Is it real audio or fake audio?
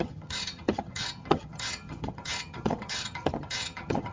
fake